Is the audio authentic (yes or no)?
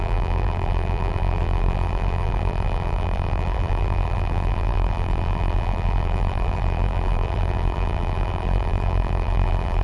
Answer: no